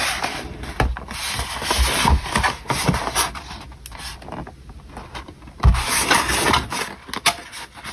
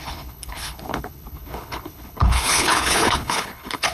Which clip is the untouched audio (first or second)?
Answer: first